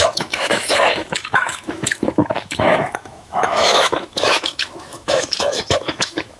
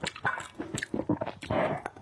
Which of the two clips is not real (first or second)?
first